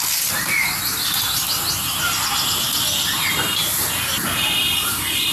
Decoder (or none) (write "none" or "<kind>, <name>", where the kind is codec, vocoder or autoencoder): none